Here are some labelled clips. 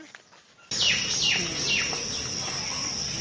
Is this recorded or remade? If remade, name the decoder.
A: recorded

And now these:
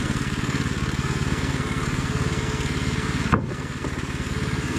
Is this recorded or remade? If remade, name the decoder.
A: remade, codec, SNAC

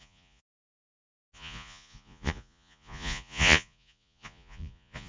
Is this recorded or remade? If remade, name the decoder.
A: remade, vocoder, Vocos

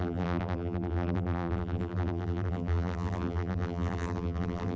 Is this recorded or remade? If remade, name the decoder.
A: remade, vocoder, BigVGAN v2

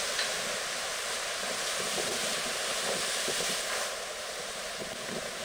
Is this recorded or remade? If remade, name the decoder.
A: remade, vocoder, BigVGAN v2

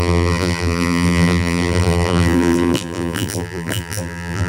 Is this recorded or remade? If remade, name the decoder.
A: remade, vocoder, BigVGAN v2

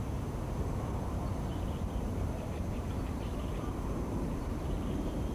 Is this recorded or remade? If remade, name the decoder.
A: remade, vocoder, BigVGAN v2